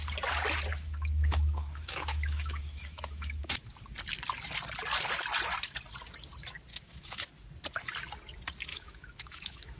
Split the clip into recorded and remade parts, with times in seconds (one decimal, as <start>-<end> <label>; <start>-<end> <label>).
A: 0.0-0.7 recorded; 0.7-3.6 remade; 3.6-6.7 recorded; 6.7-7.3 remade; 7.3-8.7 recorded; 8.7-9.8 remade